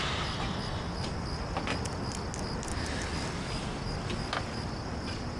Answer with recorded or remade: recorded